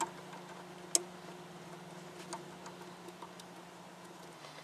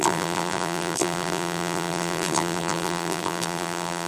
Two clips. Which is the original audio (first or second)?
first